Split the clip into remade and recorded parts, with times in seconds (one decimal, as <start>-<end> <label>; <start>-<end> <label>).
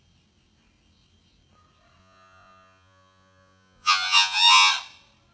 0.0-2.0 recorded; 2.0-4.7 remade; 4.7-5.3 recorded